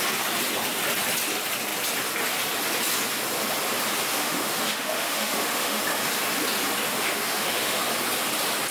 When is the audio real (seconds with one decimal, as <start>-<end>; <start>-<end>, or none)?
0.0-4.1; 5.8-6.9; 7.8-8.7